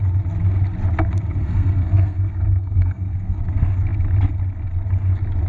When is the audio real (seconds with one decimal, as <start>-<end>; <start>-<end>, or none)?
0.0-1.4; 3.4-5.5